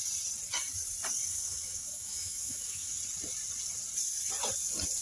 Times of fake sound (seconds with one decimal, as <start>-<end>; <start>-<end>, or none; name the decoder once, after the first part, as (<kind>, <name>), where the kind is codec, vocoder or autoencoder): 1.2-3.0 (autoencoder, DAC-VAE)